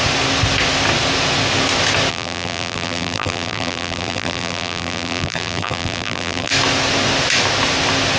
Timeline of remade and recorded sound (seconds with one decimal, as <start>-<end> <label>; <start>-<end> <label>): 0.0-2.1 recorded; 2.1-6.5 remade; 6.5-8.2 recorded